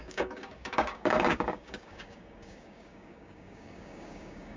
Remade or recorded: remade